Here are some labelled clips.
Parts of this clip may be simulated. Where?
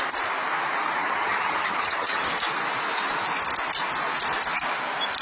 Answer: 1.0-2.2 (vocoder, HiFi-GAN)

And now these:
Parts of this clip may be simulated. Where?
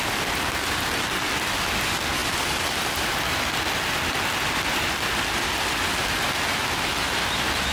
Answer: none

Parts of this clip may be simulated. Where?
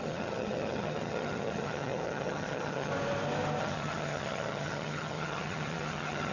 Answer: 0.0-2.9 (vocoder, HiFi-GAN); 3.6-6.3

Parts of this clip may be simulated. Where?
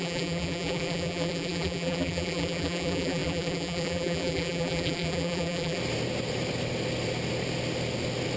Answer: 0.0-5.8 (vocoder, BigVGAN v2)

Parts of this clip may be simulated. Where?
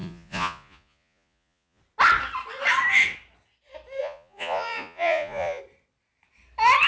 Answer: 0.0-1.8 (vocoder, Vocos); 4.0-5.6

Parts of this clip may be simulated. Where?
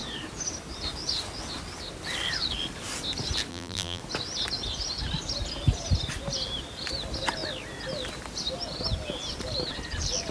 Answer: 3.5-4.0 (vocoder, BigVGAN v2)